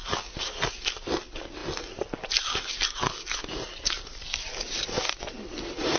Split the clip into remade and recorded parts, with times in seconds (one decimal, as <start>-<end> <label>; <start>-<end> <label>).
0.0-6.0 recorded

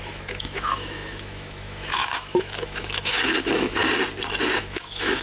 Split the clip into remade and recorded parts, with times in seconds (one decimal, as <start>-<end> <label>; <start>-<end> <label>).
0.0-3.8 remade; 3.8-4.6 recorded; 4.6-5.2 remade

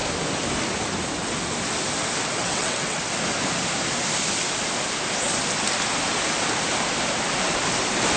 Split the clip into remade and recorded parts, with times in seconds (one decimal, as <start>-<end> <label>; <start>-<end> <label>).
0.0-2.4 recorded; 2.4-3.0 remade; 3.0-8.2 recorded

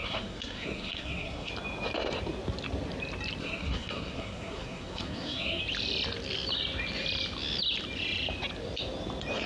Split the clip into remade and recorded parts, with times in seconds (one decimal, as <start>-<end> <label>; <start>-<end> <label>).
0.0-1.5 remade; 1.5-3.4 recorded; 3.4-5.6 remade; 5.6-9.5 recorded